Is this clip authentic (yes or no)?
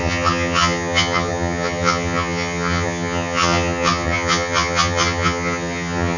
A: no